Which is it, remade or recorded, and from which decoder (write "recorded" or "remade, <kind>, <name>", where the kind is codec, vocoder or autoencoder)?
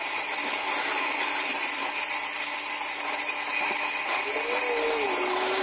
remade, vocoder, BigVGAN v2